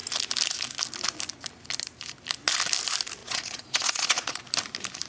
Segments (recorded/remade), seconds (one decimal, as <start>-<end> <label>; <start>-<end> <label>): 0.0-3.2 recorded; 3.2-4.4 remade; 4.4-5.1 recorded